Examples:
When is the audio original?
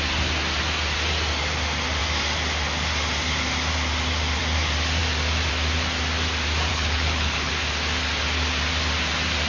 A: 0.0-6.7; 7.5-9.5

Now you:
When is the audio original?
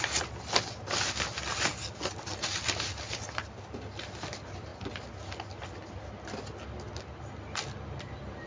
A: 0.0-8.5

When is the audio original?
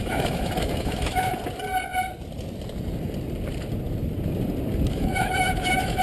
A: 1.3-4.9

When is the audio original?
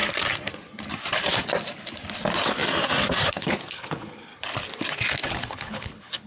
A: 0.0-3.3; 4.3-5.3